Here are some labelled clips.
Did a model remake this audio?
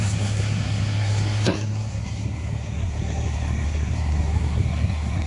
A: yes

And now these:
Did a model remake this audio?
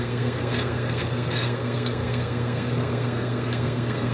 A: yes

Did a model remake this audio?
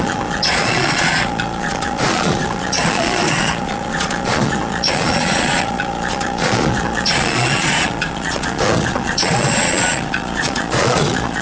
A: yes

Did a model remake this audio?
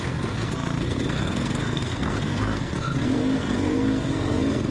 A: yes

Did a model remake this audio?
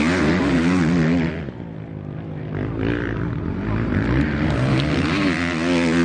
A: no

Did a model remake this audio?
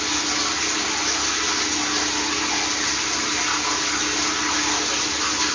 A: no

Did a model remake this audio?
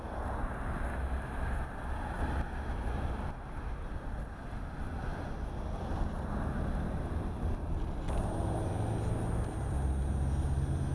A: no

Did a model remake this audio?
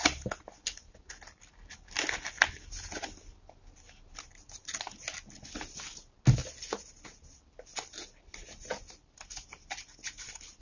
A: no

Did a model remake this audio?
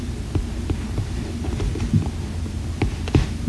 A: no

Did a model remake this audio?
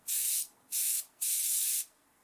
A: yes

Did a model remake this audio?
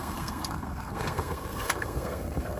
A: yes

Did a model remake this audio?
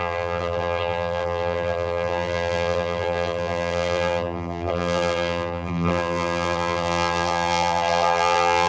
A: yes